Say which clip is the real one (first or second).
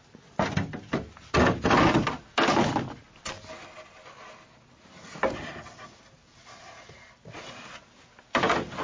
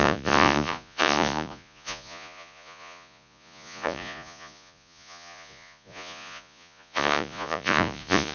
first